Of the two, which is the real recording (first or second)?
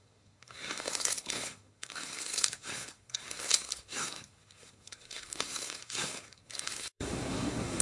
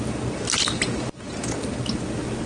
second